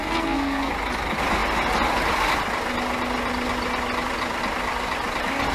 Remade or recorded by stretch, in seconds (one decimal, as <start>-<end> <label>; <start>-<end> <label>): 0.0-0.7 remade; 0.7-5.5 recorded